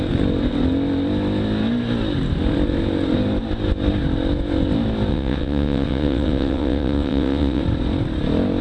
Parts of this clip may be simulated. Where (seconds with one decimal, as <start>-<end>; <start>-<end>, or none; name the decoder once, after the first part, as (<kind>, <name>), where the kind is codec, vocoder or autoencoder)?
5.1-7.6 (vocoder, WaveNeXt)